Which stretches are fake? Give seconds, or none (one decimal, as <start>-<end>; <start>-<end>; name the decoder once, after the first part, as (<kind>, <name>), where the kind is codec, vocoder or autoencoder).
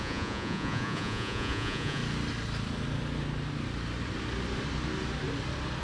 0.0-2.0 (vocoder, Vocos)